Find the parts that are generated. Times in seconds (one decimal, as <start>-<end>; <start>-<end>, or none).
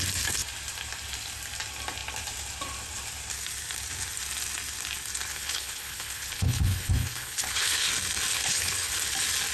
5.3-7.9; 8.3-8.9